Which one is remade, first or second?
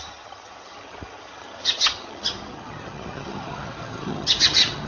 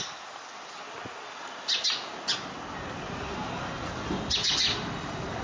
first